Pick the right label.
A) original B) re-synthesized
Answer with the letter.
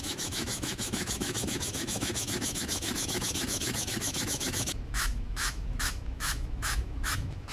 B